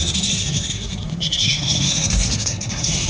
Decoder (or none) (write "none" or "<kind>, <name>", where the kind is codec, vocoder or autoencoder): codec, SNAC